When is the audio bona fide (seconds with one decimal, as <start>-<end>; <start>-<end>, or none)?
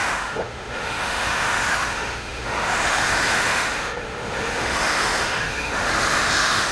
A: none